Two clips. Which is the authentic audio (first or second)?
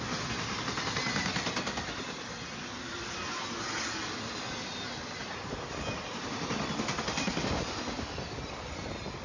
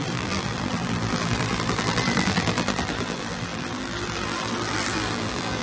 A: first